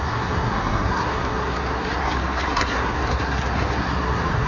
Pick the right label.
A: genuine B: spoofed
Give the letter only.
B